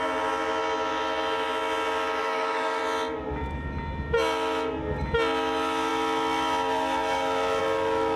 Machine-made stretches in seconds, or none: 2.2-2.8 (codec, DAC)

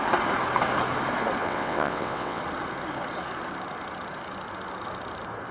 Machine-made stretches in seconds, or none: 1.4-2.4 (vocoder, WaveNeXt)